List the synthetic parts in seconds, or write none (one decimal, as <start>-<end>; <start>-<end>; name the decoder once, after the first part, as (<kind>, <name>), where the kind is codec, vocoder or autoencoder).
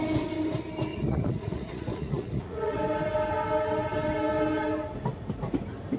0.9-2.8 (vocoder, Vocos)